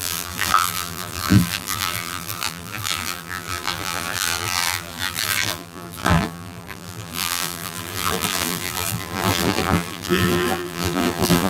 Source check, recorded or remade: remade